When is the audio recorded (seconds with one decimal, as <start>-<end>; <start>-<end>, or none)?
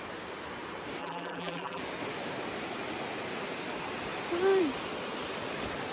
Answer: 0.0-1.0; 1.8-5.9